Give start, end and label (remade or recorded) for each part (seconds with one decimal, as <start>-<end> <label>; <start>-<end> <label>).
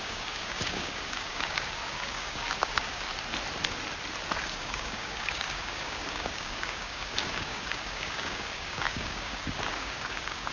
0.0-3.1 remade; 3.1-4.4 recorded; 4.4-10.5 remade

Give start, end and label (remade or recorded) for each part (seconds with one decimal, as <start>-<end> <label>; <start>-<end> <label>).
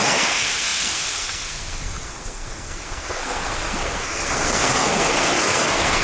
0.0-6.0 remade